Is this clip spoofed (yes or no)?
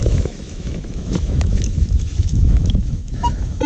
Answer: yes